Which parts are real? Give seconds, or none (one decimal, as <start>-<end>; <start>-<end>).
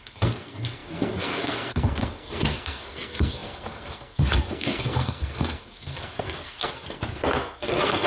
none